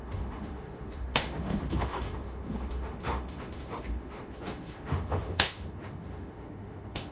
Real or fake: fake